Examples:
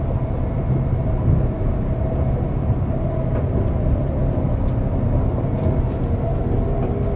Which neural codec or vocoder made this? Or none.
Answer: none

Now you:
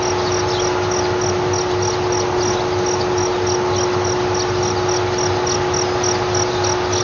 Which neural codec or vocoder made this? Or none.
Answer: none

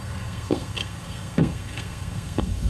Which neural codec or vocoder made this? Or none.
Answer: codec, SNAC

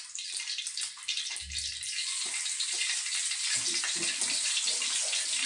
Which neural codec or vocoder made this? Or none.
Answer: none